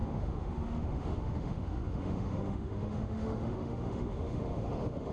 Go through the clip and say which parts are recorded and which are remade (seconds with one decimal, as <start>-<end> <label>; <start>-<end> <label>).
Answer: 0.0-5.1 remade